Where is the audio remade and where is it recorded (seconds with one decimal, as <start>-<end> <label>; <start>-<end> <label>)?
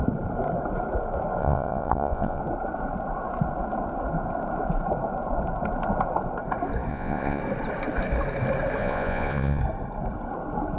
0.0-1.4 recorded; 1.4-2.4 remade; 2.4-6.9 recorded; 6.9-7.4 remade; 7.4-8.8 recorded; 8.8-9.6 remade; 9.6-10.8 recorded